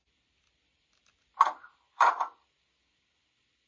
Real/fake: real